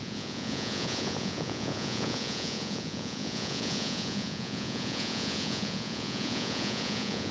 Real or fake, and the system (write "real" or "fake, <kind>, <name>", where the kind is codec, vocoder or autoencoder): fake, vocoder, Vocos